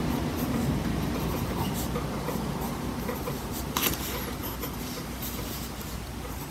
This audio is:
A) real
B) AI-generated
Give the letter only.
B